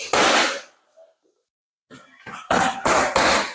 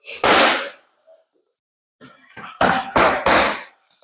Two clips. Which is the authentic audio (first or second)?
first